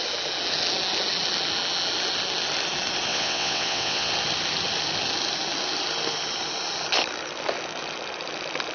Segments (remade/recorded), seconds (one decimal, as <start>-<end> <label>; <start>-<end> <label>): 0.0-3.1 recorded; 3.1-4.1 remade; 4.1-8.7 recorded